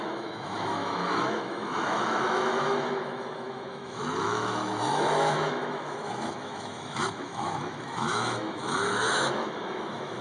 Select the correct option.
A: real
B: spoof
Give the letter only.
B